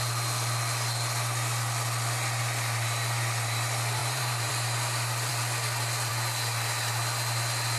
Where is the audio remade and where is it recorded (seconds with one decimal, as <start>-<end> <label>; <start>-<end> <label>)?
0.0-4.0 recorded; 4.0-4.5 remade; 4.5-7.8 recorded